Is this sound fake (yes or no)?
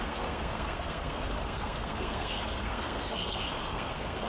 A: yes